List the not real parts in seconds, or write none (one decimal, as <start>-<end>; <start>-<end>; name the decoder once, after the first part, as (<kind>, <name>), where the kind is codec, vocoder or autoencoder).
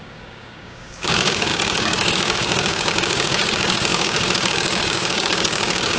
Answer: 0.0-6.0 (codec, DAC)